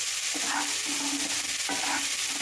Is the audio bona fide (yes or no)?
yes